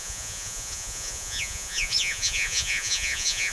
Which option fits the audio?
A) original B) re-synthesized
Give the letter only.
B